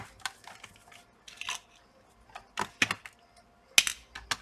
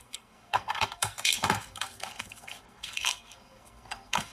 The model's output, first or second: second